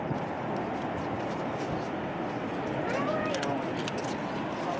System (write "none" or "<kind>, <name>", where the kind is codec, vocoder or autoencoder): none